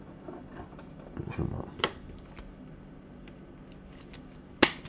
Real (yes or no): yes